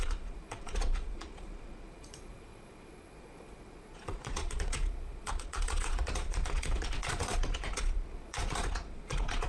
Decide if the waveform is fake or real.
fake